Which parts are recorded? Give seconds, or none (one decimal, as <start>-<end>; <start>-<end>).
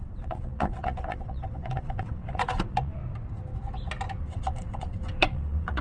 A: 3.0-4.2